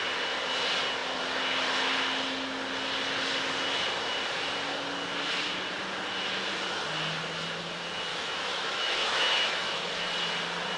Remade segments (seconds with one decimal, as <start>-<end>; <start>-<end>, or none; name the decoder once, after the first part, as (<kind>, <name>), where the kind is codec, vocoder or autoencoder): 8.1-9.9 (autoencoder, DAC-VAE)